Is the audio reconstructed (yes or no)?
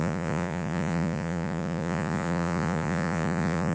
yes